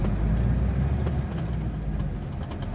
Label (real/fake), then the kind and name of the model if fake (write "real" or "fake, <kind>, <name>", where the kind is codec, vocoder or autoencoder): real